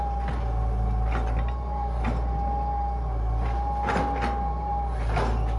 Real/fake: real